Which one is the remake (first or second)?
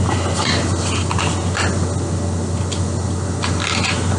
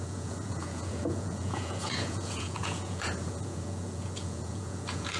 second